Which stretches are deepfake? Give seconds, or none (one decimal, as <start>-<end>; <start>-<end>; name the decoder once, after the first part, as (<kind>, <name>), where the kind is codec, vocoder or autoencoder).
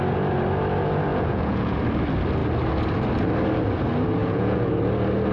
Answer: 1.1-1.8 (vocoder, Vocos); 4.2-4.7